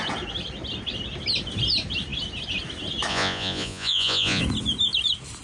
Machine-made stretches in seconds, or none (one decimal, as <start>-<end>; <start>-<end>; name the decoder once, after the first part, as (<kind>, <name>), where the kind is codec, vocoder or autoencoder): 3.1-4.4 (vocoder, Vocos)